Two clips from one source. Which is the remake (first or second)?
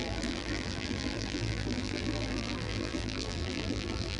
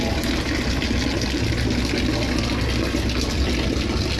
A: first